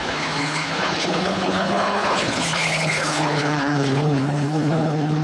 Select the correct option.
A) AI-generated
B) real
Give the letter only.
A